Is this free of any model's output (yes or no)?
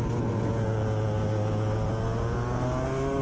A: yes